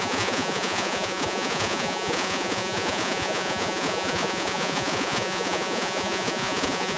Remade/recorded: remade